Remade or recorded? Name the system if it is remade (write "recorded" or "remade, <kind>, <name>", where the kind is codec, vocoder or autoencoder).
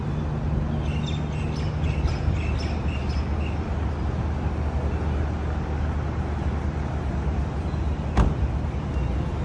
recorded